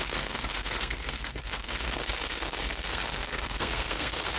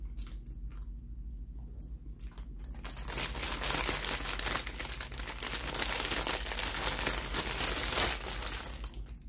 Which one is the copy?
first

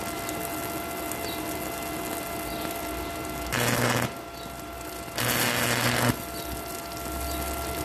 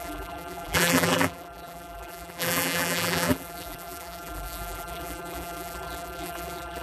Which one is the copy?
second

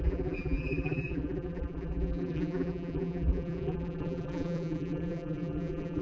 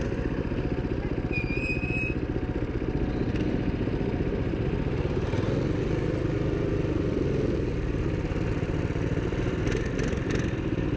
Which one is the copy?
first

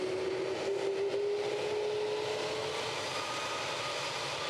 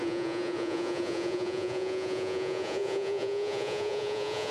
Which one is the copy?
second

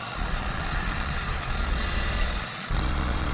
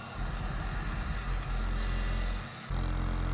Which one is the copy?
first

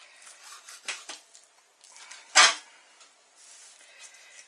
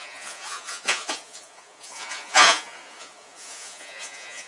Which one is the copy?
second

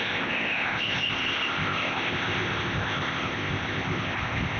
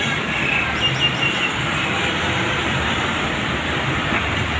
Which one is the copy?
first